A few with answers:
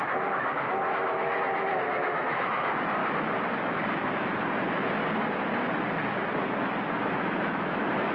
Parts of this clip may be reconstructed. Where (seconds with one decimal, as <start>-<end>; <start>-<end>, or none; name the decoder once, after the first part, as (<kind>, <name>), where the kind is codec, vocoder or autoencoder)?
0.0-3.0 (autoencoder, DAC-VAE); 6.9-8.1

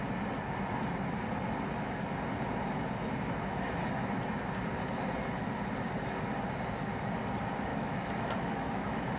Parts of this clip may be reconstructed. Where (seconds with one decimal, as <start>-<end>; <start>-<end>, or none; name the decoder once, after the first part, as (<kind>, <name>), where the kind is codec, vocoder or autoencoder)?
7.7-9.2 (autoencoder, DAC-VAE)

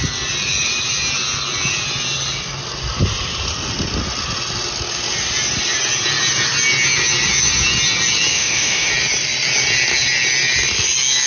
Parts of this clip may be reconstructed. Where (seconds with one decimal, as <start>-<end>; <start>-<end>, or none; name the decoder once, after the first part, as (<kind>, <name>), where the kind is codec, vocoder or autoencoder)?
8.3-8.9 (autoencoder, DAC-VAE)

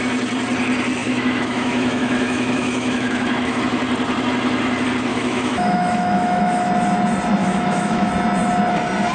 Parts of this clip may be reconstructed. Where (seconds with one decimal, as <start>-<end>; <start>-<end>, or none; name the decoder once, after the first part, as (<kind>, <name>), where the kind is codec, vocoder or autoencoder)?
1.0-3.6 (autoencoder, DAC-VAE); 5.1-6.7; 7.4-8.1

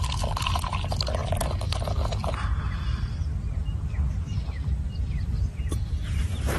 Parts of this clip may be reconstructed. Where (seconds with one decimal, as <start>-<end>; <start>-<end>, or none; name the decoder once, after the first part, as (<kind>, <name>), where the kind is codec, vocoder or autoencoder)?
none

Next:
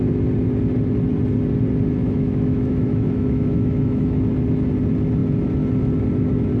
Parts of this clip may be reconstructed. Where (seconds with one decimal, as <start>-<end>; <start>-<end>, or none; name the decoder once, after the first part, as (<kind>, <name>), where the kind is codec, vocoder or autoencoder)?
2.0-4.2 (autoencoder, DAC-VAE)